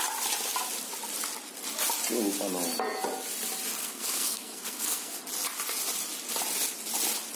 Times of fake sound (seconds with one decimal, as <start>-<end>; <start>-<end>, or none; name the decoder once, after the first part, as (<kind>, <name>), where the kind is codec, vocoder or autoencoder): 3.8-5.2 (codec, SNAC)